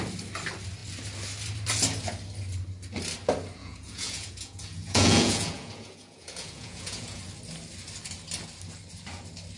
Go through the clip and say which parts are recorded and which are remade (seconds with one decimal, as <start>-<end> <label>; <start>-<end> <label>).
0.0-3.6 recorded; 3.6-7.2 remade; 7.2-9.6 recorded